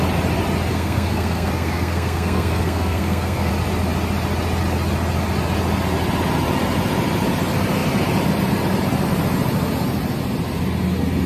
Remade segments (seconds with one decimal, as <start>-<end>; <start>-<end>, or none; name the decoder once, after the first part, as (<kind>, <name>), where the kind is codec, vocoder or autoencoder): 0.7-3.5 (codec, SNAC)